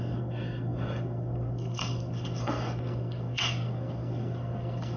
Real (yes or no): no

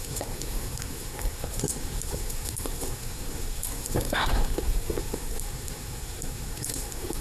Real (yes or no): no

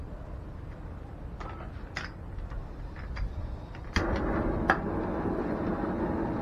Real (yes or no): yes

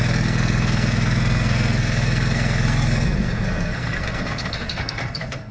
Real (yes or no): no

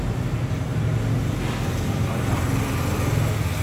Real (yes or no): yes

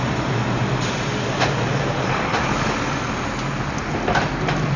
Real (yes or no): yes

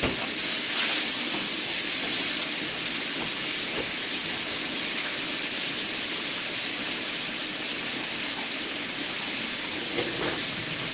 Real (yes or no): yes